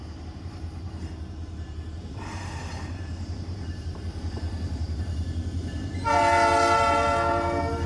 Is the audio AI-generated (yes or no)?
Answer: yes